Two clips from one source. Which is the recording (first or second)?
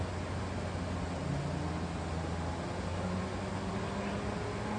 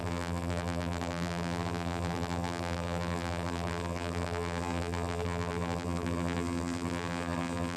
first